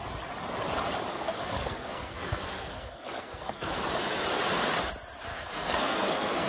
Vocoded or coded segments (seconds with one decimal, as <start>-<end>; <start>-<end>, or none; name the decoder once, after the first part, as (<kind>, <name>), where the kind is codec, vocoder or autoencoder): 1.1-3.7 (codec, SNAC); 5.3-6.5